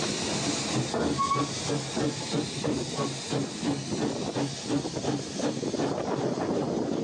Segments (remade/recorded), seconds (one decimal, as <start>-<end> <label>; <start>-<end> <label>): 0.0-7.0 recorded

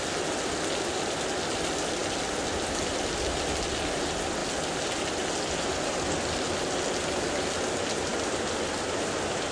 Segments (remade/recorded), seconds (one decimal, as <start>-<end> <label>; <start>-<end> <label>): 0.0-9.5 recorded

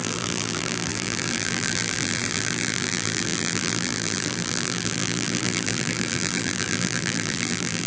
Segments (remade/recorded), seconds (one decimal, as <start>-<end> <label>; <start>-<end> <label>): 0.0-7.9 remade

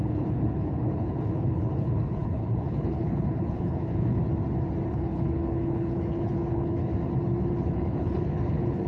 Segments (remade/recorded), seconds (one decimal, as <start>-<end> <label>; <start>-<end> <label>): 0.0-4.2 remade; 4.2-4.9 recorded; 4.9-6.9 remade; 6.9-7.5 recorded; 7.5-8.9 remade

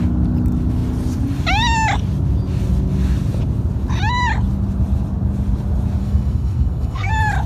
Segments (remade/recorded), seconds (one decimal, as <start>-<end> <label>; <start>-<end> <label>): 0.0-6.0 recorded; 6.0-7.1 remade; 7.1-7.5 recorded

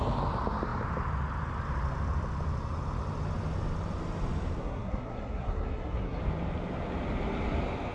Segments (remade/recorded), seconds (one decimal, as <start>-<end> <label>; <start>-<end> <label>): 0.0-4.6 recorded; 4.6-6.2 remade; 6.2-7.9 recorded

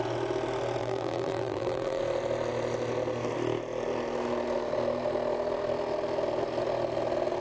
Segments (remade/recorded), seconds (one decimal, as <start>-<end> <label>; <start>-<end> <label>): 0.0-0.8 recorded; 0.8-2.0 remade; 2.0-7.4 recorded